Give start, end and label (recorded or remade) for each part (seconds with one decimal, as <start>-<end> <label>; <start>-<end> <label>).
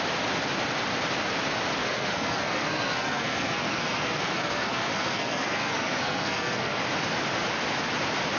0.0-1.8 recorded; 1.8-6.8 remade; 6.8-8.4 recorded